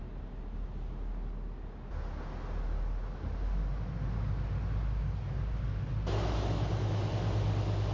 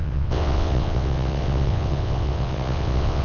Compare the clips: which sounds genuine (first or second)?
first